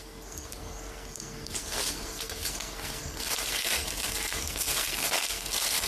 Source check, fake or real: fake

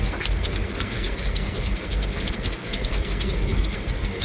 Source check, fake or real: fake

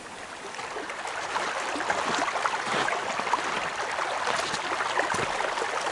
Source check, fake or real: real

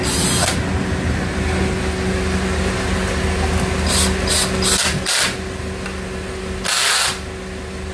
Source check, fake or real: real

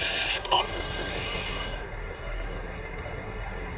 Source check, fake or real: fake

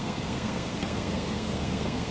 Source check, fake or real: fake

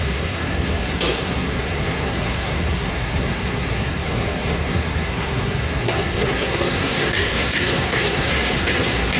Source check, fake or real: fake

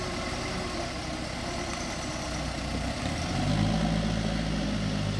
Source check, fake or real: real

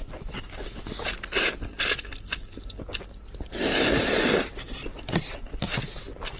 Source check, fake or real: real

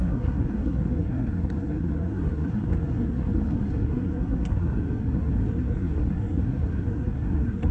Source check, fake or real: fake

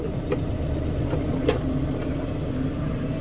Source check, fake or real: real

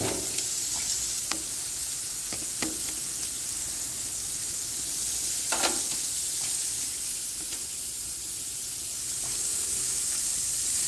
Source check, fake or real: real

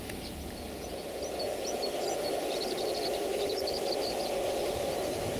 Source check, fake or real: real